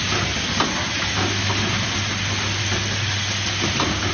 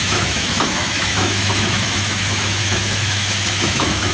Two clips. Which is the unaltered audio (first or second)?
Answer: first